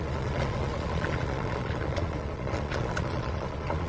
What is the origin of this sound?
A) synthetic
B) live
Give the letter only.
A